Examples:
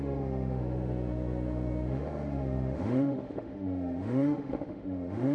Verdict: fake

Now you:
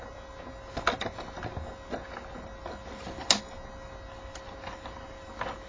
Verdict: real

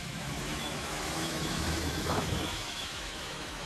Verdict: fake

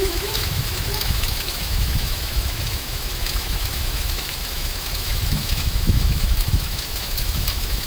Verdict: fake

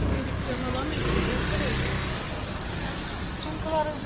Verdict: real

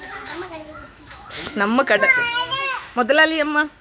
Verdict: fake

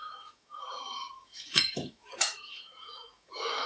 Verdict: fake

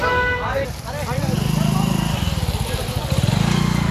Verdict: real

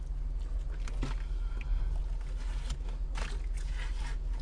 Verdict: real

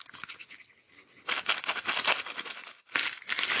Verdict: real